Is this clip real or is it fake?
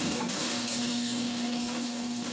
fake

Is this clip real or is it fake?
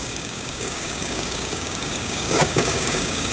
fake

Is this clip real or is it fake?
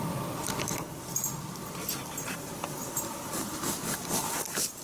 real